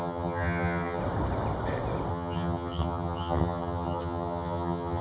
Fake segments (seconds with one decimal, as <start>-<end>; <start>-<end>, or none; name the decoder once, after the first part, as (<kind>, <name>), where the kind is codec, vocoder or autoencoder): 0.0-1.0 (vocoder, HiFi-GAN); 2.1-5.0